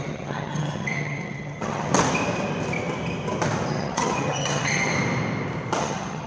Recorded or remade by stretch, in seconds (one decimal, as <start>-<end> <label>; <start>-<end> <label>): 0.0-1.9 remade; 1.9-3.7 recorded; 3.7-4.9 remade; 4.9-5.8 recorded; 5.8-6.3 remade